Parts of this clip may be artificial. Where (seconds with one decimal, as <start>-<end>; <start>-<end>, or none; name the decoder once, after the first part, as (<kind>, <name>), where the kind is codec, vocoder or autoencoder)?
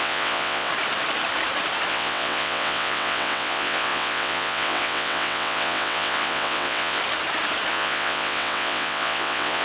0.0-0.7 (vocoder, WaveNeXt); 1.9-7.0; 7.7-9.6